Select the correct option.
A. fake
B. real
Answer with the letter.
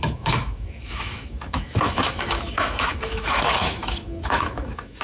A